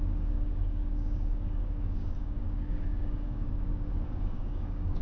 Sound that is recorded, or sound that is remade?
remade